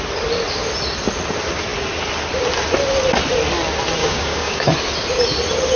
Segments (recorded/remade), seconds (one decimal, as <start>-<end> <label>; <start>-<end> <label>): 0.0-4.0 recorded; 4.0-4.7 remade; 4.7-5.8 recorded